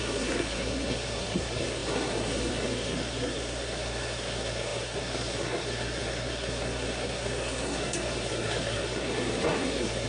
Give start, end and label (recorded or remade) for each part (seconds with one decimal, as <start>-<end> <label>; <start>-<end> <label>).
0.0-10.1 remade

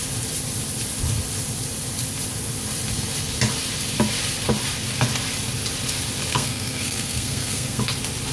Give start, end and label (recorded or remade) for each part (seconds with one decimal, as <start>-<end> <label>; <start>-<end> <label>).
0.0-6.3 recorded; 6.3-7.8 remade; 7.8-8.3 recorded